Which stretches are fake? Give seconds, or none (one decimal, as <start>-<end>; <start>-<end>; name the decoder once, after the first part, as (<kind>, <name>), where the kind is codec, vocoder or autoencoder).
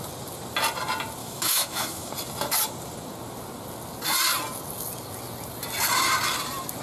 1.2-2.1 (autoencoder, DAC-VAE)